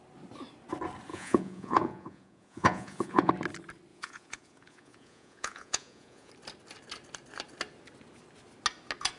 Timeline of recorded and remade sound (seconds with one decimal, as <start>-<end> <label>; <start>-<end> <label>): 0.0-1.1 recorded; 1.1-3.3 remade; 3.3-3.9 recorded; 3.9-6.3 remade; 6.3-9.2 recorded